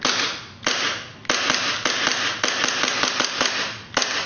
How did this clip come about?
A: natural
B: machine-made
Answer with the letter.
A